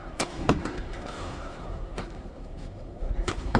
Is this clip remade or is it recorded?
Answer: remade